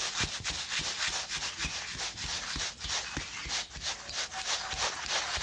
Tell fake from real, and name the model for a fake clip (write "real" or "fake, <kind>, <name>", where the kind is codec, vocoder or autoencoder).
real